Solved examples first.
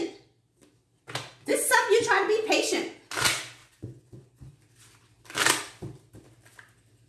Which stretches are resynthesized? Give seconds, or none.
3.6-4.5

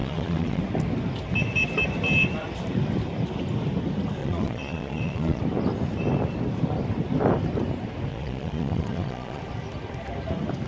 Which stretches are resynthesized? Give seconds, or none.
0.0-0.6; 4.2-5.4; 8.1-9.4

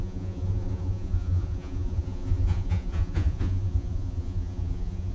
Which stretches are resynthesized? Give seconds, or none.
0.0-5.1

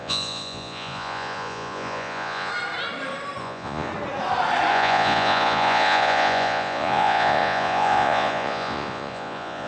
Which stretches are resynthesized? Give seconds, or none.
0.0-2.5; 3.4-3.9; 4.7-9.7

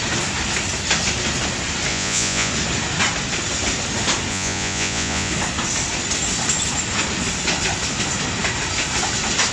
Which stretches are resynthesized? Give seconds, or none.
1.9-2.5; 4.3-5.3

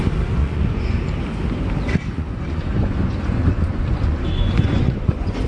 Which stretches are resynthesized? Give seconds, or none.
0.4-1.0; 2.1-5.5